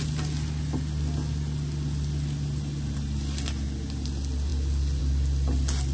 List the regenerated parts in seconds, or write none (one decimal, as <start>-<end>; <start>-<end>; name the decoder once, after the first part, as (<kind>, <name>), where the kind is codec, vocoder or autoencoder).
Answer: none